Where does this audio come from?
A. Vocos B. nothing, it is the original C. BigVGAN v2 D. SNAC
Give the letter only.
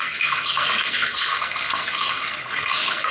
D